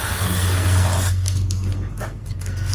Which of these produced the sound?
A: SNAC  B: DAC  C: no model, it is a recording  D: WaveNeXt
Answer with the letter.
A